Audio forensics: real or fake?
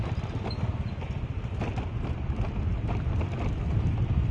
real